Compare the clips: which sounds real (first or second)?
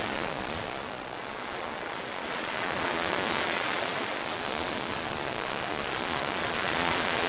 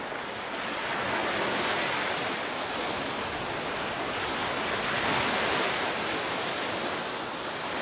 second